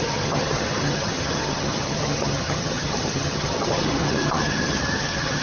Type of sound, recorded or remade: remade